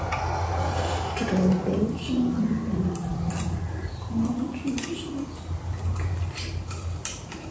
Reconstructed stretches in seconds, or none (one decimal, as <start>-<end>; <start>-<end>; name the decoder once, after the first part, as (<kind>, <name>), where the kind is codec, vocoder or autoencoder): none